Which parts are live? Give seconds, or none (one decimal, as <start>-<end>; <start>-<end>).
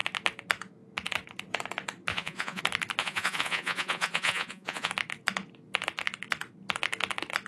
0.0-2.1; 2.6-3.0; 4.9-7.5